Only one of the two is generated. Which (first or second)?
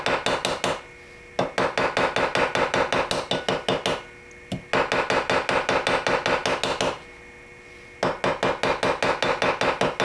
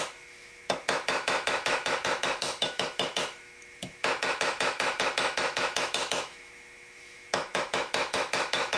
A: second